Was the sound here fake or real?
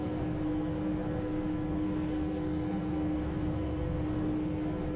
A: fake